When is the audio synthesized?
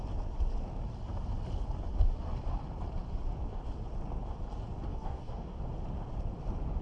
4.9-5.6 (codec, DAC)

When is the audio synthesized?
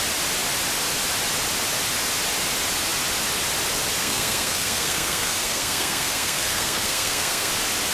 4.0-7.5 (codec, SNAC)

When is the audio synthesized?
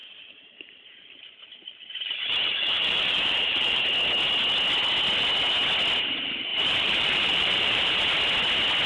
0.0-3.8 (vocoder, BigVGAN v2); 6.5-8.1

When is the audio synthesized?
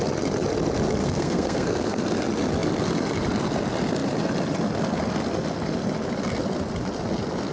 1.0-2.0 (codec, SNAC)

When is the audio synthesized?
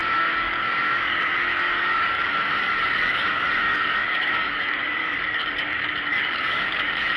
0.0-7.2 (codec, DAC)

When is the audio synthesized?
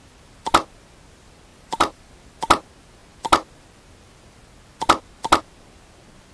1.5-2.1 (vocoder, BigVGAN v2)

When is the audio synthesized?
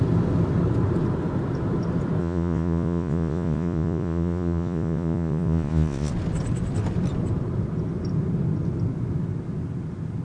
2.2-6.1 (vocoder, Vocos)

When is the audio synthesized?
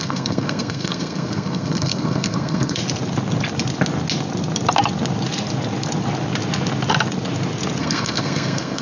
0.0-2.8 (codec, SNAC); 7.8-8.8